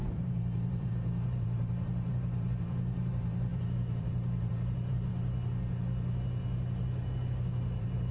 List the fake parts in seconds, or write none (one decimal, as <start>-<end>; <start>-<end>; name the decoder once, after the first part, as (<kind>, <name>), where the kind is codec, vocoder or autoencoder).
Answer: 0.0-5.1 (vocoder, BigVGAN v2); 7.3-8.1